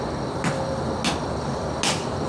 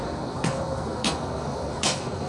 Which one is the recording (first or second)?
first